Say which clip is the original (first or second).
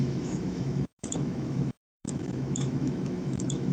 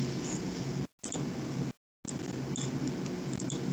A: second